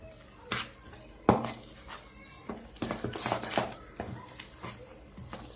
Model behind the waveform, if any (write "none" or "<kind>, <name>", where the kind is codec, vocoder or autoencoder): none